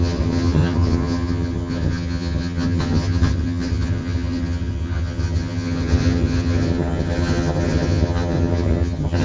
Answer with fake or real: fake